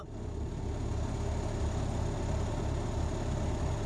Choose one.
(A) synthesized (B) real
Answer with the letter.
B